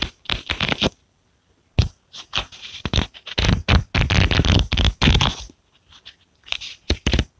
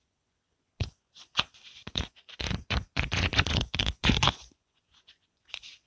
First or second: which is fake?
second